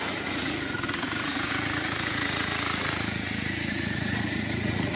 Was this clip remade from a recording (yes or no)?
yes